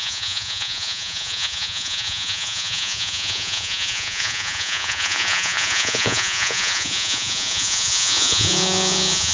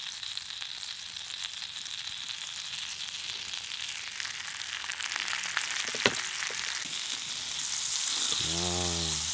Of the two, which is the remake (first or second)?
first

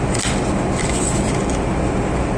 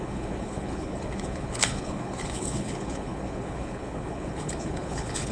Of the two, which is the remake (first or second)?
second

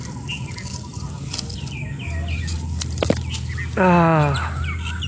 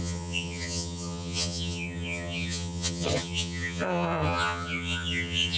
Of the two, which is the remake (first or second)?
second